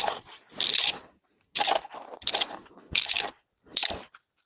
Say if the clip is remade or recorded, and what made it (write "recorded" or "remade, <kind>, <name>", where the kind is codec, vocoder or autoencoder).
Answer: recorded